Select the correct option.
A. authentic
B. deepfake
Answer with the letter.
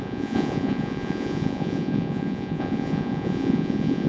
B